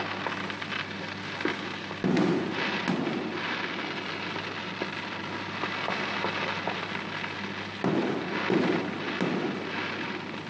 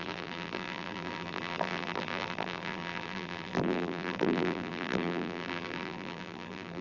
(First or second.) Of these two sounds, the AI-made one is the second